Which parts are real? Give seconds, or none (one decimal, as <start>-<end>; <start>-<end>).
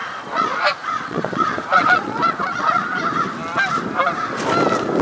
3.0-5.0